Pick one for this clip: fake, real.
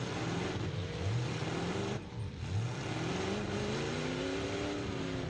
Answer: real